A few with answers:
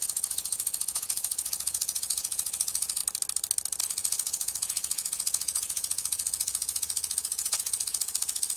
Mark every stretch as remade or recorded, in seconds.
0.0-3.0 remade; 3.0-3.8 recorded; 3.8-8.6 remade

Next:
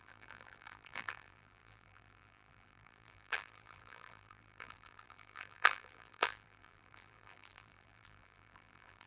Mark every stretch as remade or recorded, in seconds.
0.0-9.1 remade

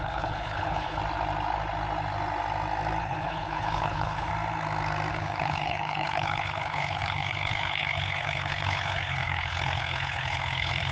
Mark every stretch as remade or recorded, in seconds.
0.0-1.0 remade; 1.0-3.0 recorded; 3.0-4.3 remade; 4.3-5.1 recorded; 5.1-10.9 remade